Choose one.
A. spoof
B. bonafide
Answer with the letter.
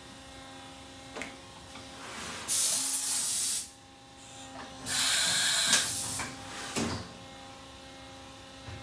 B